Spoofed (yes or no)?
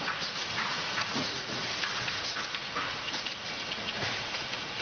yes